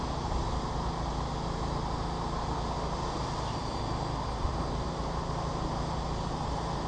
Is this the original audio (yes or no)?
yes